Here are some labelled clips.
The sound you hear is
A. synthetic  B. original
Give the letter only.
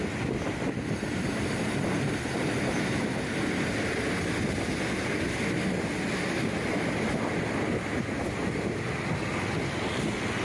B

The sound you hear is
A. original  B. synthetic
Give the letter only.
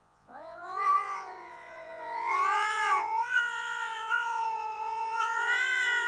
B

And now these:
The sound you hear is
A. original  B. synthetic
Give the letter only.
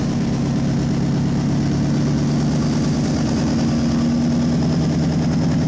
A